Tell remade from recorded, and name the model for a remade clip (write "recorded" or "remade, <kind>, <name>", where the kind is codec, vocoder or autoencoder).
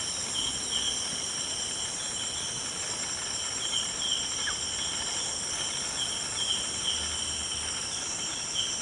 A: recorded